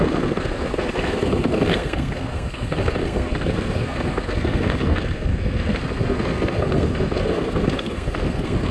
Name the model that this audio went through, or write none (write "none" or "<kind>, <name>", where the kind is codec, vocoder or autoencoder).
codec, SNAC